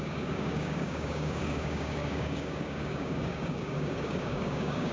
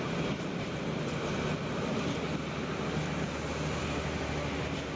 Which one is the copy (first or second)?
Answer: first